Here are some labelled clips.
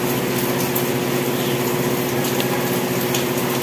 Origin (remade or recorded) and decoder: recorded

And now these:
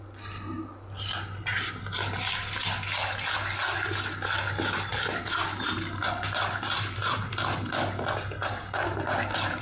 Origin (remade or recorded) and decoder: recorded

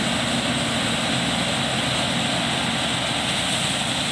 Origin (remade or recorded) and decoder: recorded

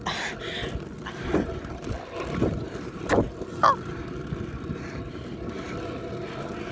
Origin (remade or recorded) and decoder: recorded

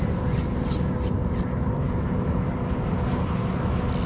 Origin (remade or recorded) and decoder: recorded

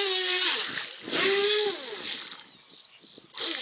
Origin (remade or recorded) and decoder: recorded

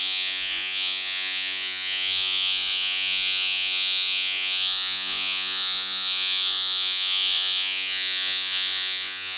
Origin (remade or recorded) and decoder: remade, vocoder, Vocos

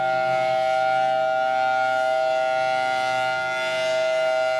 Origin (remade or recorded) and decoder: recorded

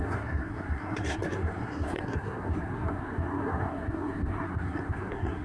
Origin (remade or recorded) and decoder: remade, codec, SNAC